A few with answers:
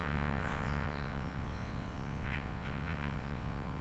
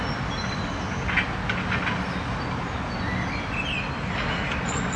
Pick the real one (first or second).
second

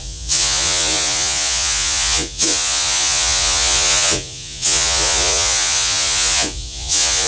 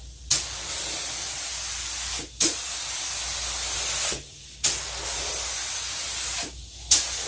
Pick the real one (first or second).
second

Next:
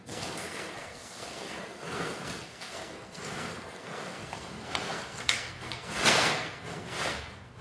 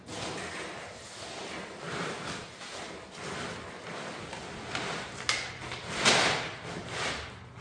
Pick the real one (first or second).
second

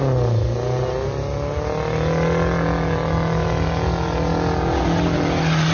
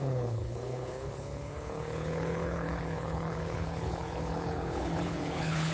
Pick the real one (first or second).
first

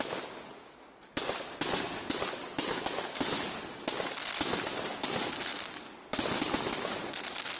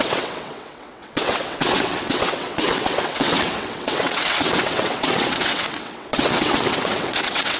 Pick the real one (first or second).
first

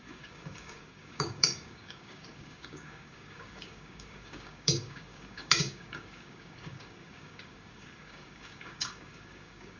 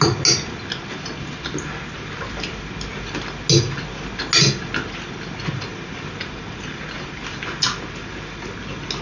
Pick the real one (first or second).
second